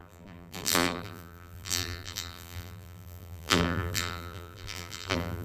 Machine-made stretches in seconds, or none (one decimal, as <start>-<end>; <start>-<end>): 0.0-5.4